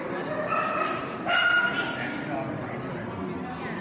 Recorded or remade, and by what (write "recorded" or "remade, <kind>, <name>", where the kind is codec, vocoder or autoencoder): recorded